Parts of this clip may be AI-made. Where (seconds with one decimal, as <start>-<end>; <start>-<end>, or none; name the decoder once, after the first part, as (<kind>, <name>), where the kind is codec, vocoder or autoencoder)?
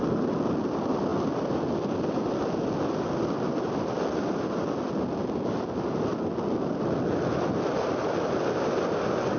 1.1-5.5 (vocoder, BigVGAN v2)